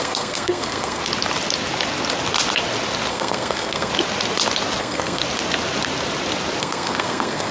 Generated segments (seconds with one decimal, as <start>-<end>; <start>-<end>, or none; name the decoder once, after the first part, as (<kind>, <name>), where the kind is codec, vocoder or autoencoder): 0.0-1.0 (codec, SNAC); 3.1-3.9; 4.8-5.2; 6.6-7.5